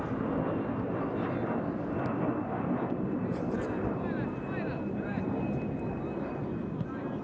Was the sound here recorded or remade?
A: remade